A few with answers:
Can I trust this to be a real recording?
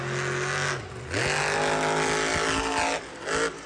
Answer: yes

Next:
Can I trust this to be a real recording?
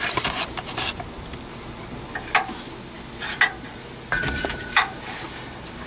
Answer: yes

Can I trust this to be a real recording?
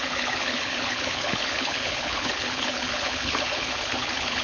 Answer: no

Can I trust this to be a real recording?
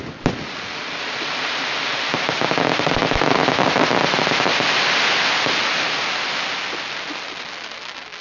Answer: yes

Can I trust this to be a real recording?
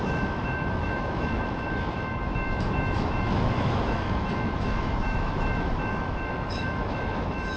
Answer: no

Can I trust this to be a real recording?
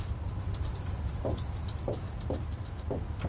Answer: yes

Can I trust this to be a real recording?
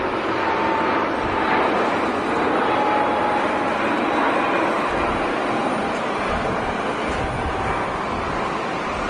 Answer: yes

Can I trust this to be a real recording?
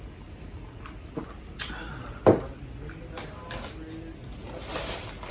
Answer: yes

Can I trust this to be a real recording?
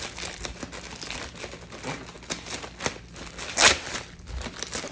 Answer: yes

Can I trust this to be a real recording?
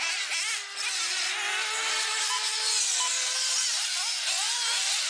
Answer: yes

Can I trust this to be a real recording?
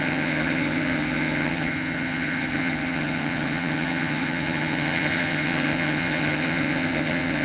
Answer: no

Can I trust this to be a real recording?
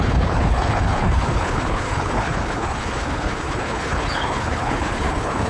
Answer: no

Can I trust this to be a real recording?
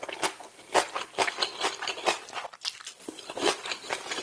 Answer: yes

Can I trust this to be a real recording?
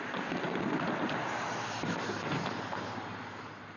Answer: yes